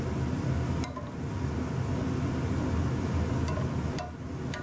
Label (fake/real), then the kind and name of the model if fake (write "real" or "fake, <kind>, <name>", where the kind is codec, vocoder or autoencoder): real